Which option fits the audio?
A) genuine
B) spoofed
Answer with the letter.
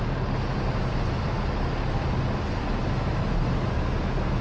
A